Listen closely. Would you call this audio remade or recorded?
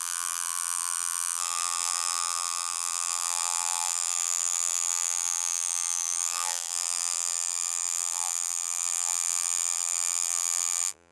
remade